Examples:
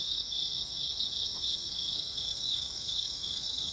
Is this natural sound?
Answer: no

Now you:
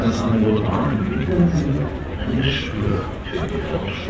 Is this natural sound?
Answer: no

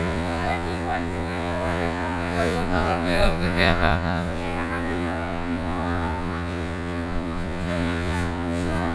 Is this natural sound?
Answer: no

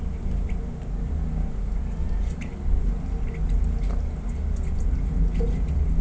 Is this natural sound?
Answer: yes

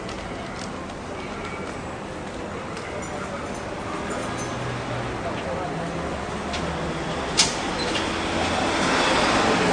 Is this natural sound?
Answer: yes